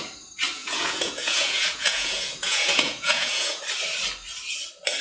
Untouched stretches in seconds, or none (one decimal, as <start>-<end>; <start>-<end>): 0.0-0.6; 3.6-5.0